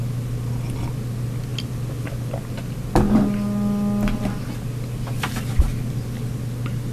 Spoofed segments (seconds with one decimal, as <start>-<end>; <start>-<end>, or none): none